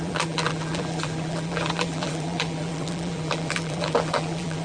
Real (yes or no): no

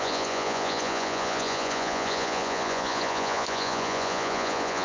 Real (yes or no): no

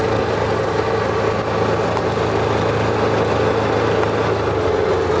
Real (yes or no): yes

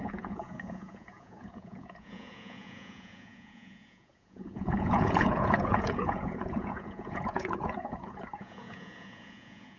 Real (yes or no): no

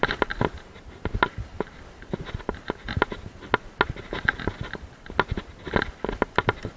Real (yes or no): yes